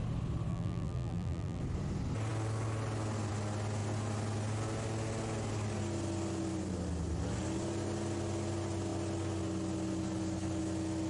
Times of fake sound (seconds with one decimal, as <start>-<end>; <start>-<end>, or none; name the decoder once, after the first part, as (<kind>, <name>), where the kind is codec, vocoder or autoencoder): 0.5-1.6 (vocoder, BigVGAN v2)